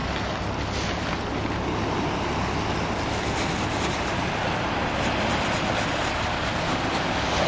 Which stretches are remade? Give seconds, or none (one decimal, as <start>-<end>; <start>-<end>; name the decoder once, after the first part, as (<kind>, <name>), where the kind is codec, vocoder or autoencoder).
none